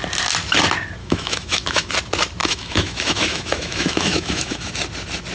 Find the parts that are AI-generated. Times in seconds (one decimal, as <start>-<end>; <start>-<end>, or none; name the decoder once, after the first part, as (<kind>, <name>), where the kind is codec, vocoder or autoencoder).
1.0-1.9 (autoencoder, DAC-VAE); 2.4-4.7